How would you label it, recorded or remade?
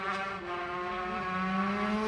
recorded